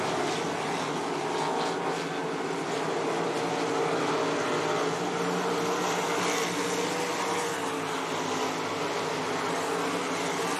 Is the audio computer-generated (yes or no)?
no